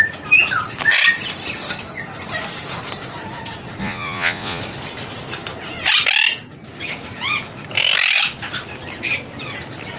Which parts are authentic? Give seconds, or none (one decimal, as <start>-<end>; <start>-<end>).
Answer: 0.0-3.8; 4.6-10.0